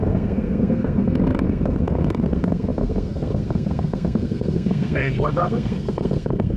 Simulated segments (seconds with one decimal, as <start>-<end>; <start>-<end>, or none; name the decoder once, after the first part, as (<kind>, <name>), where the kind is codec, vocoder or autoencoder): 0.0-6.6 (codec, SNAC)